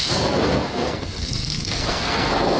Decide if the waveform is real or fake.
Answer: fake